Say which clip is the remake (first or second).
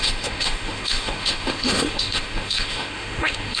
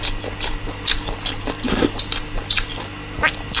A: first